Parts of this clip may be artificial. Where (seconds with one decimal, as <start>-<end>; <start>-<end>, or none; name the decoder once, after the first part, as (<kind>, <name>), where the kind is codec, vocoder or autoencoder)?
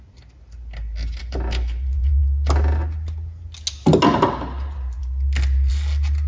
1.2-2.2 (vocoder, BigVGAN v2)